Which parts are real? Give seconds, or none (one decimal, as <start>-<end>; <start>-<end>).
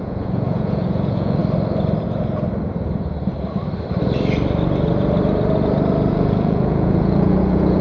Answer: 1.4-6.1